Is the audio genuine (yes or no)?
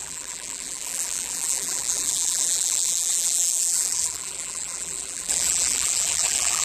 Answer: no